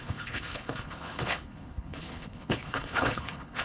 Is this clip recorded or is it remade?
remade